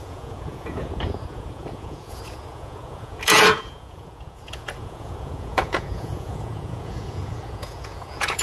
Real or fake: fake